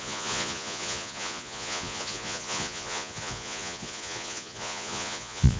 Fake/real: fake